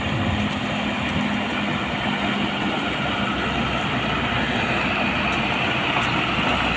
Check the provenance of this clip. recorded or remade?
recorded